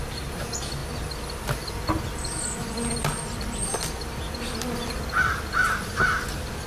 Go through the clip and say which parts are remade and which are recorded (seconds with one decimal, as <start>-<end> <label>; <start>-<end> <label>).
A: 0.0-6.7 recorded